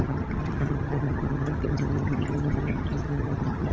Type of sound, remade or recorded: remade